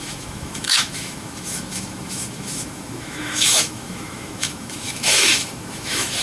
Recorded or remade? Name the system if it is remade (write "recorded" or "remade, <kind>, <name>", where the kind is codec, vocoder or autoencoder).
remade, autoencoder, DAC-VAE